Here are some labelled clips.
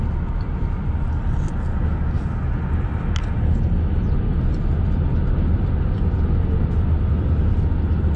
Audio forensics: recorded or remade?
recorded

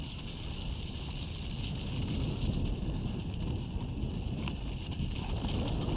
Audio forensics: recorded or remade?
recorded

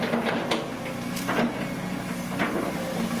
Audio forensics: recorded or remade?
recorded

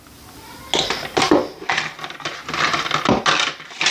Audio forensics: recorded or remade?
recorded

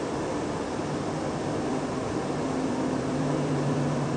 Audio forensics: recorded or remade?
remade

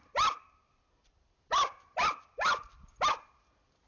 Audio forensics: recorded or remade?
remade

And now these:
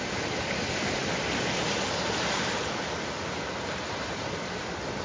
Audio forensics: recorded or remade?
recorded